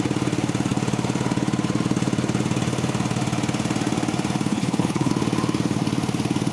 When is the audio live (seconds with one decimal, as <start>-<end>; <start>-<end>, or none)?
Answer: 0.0-4.5; 5.1-6.5